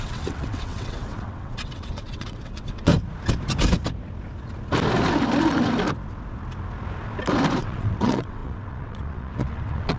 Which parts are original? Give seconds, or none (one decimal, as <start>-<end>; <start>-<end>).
2.9-7.6

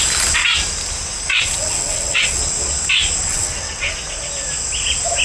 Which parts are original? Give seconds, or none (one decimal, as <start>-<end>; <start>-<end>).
0.0-1.3; 2.4-3.3; 3.9-5.2

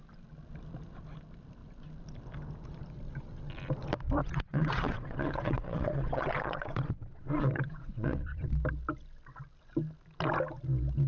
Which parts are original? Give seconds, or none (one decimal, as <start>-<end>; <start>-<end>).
0.0-4.2; 8.5-11.1

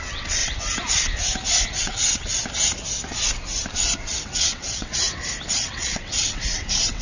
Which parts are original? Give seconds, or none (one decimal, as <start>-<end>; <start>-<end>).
0.4-1.8; 2.4-4.1; 4.9-5.5